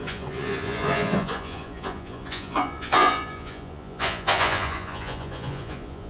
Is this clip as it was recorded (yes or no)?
no